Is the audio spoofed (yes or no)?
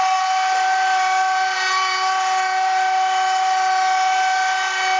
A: no